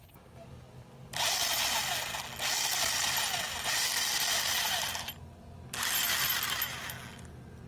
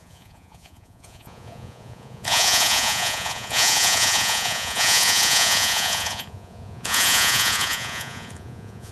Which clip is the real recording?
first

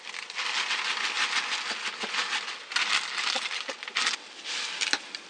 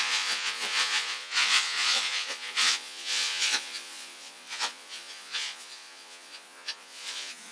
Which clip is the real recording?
first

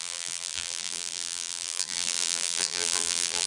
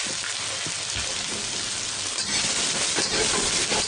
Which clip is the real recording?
second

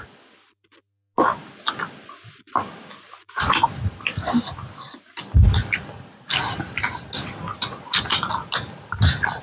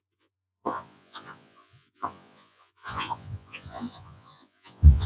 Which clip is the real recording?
first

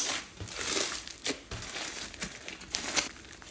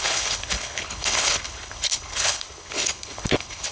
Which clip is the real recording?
first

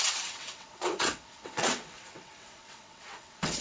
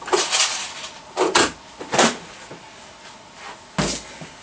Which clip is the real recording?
second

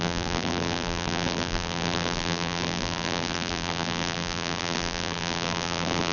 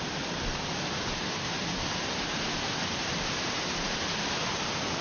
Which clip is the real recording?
second